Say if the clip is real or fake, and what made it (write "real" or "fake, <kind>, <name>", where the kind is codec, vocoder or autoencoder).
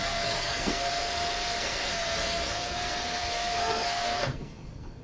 fake, codec, SNAC